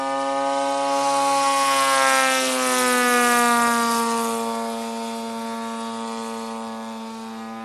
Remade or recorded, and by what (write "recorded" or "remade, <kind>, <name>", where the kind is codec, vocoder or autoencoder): recorded